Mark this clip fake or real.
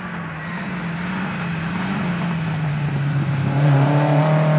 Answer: real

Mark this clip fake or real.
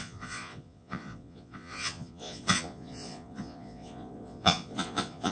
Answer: fake